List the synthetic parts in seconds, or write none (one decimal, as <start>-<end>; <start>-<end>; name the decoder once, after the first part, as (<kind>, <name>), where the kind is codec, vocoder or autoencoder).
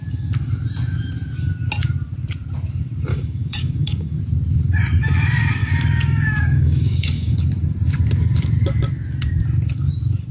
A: 3.1-4.2 (codec, DAC); 5.6-7.3